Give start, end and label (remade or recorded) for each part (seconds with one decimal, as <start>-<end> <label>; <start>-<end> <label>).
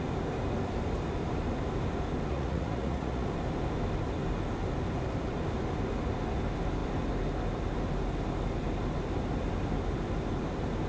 0.0-2.3 recorded; 2.3-3.3 remade; 3.3-10.9 recorded